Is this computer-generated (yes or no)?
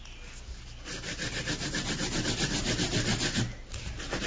no